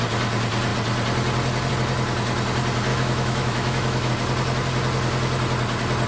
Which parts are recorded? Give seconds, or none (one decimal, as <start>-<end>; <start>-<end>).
0.0-2.9; 4.1-6.1